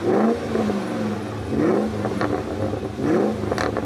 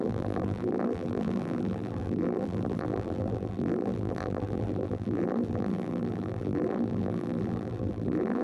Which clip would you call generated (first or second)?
second